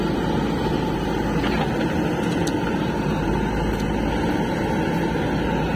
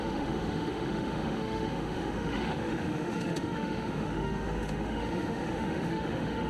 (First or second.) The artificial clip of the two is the second